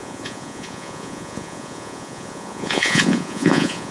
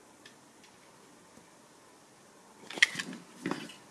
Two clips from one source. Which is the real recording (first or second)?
second